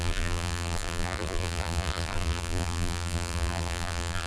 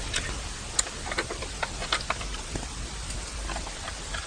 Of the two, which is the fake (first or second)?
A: first